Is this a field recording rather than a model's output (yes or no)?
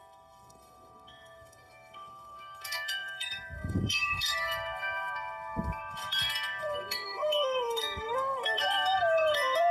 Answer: no